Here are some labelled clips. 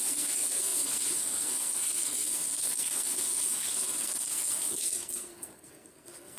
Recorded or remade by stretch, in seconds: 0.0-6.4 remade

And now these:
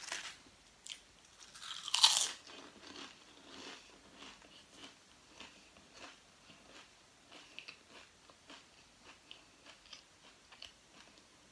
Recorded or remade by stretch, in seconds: 0.0-11.5 recorded

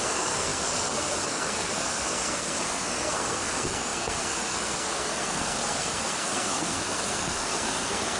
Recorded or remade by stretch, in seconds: 0.0-8.2 remade

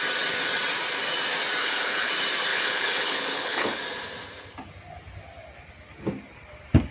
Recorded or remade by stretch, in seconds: 0.0-1.6 recorded; 1.6-2.1 remade; 2.1-2.5 recorded; 2.5-3.8 remade; 3.8-6.9 recorded

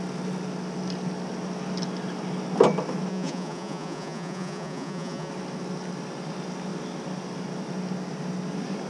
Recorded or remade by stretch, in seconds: 0.0-3.1 recorded; 3.1-5.3 remade; 5.3-8.9 recorded

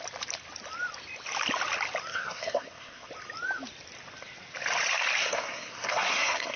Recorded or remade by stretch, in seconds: 0.0-2.1 recorded; 2.1-3.1 remade; 3.1-5.2 recorded; 5.2-6.6 remade

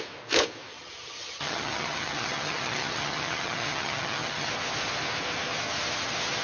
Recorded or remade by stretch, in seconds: 0.0-0.7 recorded; 0.7-4.5 remade; 4.5-6.4 recorded

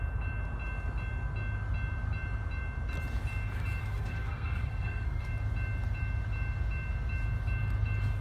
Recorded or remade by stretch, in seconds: 0.0-3.8 recorded; 3.8-5.3 remade; 5.3-8.2 recorded